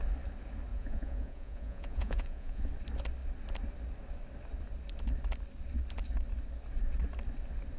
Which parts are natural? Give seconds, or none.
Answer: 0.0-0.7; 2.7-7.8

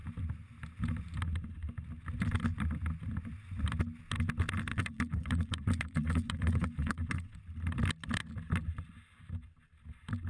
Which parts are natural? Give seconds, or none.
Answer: 0.0-4.7; 7.4-10.3

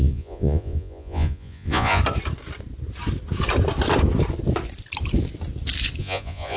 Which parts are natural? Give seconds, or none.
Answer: 2.0-6.0

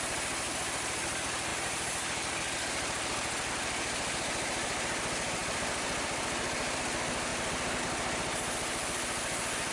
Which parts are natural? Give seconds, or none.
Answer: 0.0-5.4; 6.8-7.3; 7.8-9.7

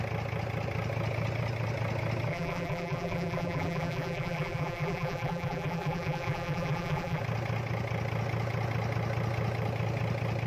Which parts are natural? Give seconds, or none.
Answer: 0.0-2.3; 7.2-10.5

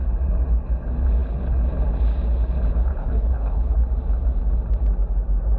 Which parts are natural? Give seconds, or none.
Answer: 0.0-2.9; 3.9-5.6

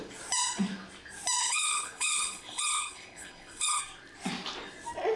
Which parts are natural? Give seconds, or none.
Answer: 0.0-1.4; 3.8-5.2